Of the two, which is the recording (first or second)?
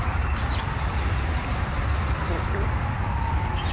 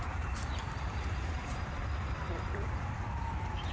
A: first